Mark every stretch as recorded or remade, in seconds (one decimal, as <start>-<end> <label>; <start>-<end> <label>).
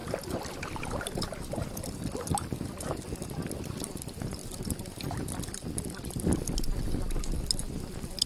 0.0-8.3 recorded